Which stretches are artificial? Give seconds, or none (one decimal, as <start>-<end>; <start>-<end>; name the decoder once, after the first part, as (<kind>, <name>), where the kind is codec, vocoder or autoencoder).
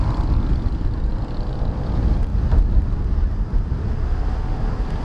none